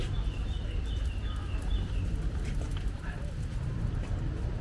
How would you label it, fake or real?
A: real